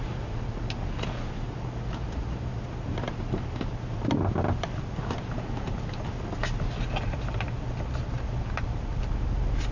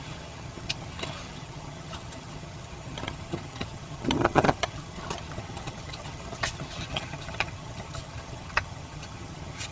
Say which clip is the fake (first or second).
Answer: second